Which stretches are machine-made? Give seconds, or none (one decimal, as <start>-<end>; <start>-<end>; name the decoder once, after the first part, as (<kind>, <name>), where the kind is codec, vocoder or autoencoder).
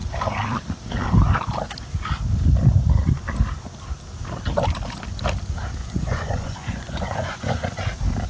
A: 5.8-7.8 (vocoder, Vocos)